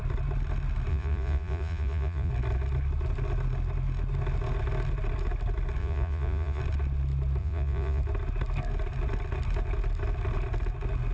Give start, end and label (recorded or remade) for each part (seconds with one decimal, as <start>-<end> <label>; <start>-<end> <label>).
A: 0.0-0.9 recorded; 0.9-2.3 remade; 2.3-5.8 recorded; 5.8-6.6 remade; 6.6-7.4 recorded; 7.4-8.0 remade; 8.0-11.1 recorded